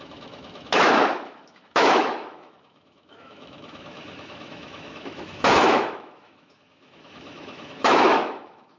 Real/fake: fake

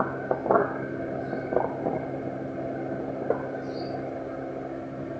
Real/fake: real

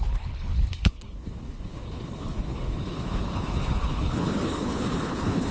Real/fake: fake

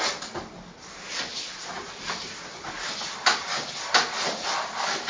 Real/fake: real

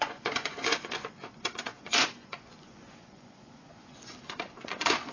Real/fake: fake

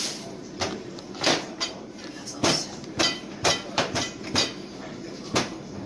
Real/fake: fake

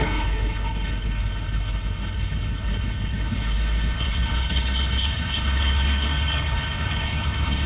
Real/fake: fake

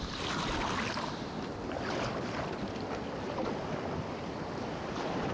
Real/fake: real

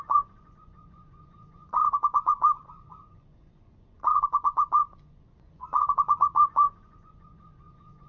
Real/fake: fake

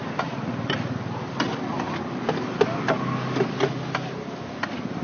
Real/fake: real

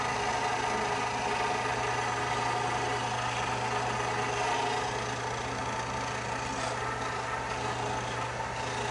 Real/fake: real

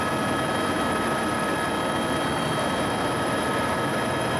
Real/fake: real